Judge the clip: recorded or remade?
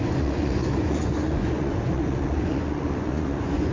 remade